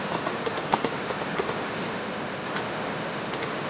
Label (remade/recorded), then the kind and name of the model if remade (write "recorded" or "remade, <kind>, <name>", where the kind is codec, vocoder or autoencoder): remade, autoencoder, DAC-VAE